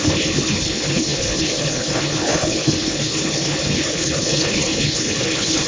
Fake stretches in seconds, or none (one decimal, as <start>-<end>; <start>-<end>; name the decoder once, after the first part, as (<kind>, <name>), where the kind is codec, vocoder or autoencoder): 0.0-5.7 (codec, HILCodec)